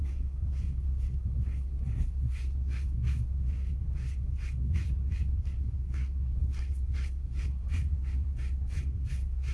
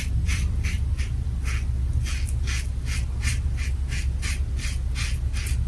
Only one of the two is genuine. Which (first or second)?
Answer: second